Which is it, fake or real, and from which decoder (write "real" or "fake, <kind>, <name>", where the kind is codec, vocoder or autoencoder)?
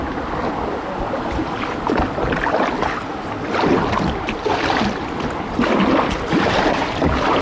real